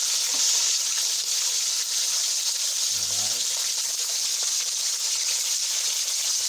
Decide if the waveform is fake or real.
real